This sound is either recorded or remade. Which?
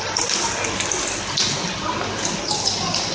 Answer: recorded